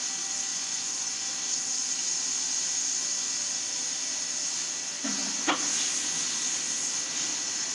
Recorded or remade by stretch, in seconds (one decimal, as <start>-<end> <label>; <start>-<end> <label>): 0.0-0.5 recorded; 0.5-1.2 remade; 1.2-7.7 recorded